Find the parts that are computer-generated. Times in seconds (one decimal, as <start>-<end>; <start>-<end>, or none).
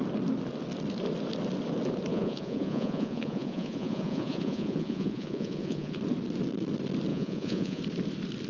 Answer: 2.1-6.0; 7.1-7.8